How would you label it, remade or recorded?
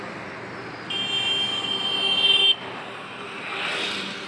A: recorded